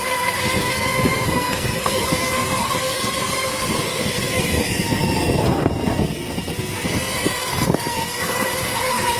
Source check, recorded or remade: remade